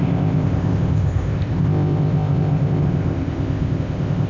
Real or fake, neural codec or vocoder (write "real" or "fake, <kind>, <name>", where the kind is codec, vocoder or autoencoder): fake, codec, ZipCodec